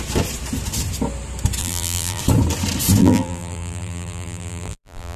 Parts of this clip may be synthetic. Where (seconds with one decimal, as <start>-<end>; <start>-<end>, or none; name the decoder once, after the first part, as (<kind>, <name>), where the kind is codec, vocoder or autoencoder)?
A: 1.6-2.2 (vocoder, BigVGAN v2); 3.0-5.2